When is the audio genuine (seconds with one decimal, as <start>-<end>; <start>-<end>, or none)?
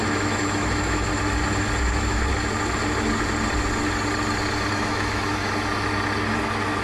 1.1-1.8; 2.3-4.7; 5.4-6.3